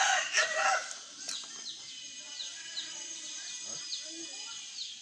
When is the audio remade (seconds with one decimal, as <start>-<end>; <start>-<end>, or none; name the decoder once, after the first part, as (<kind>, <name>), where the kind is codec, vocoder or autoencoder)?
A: none